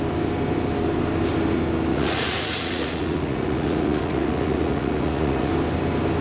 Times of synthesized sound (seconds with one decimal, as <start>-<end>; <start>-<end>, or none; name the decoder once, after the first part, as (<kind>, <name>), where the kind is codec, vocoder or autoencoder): 1.9-5.5 (vocoder, Vocos)